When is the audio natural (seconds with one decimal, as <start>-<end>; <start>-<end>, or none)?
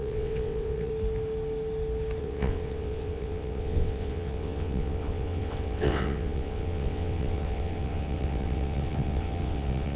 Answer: 0.9-2.2